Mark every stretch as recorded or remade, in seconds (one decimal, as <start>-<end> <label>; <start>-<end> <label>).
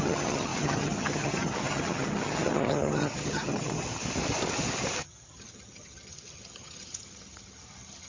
0.0-4.0 remade; 4.0-5.0 recorded; 5.0-8.1 remade